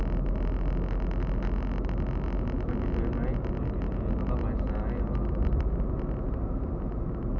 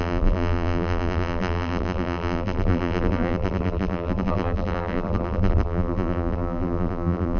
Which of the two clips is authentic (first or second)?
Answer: first